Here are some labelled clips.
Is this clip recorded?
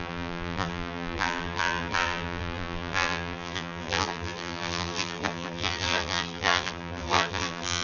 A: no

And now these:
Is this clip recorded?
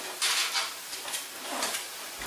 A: yes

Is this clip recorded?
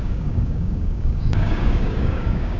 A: no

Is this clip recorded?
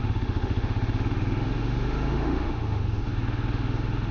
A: no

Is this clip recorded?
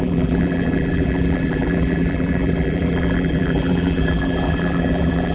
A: no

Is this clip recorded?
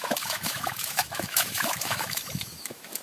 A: no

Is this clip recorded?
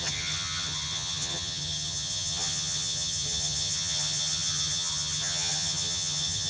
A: no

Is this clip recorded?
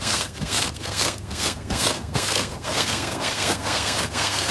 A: no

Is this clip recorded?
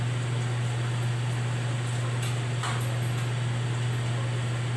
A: yes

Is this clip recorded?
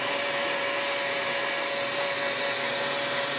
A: yes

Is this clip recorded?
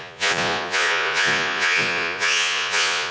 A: no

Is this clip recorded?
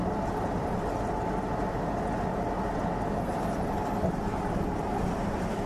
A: yes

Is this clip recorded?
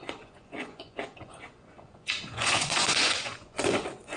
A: no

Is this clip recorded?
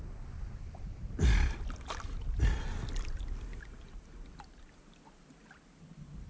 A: yes